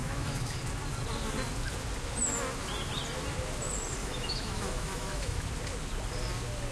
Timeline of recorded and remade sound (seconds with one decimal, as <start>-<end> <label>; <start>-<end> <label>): 0.0-0.6 remade; 0.6-4.0 recorded; 4.0-5.4 remade; 5.4-6.7 recorded